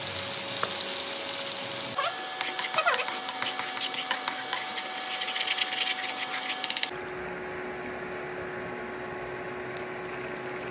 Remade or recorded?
recorded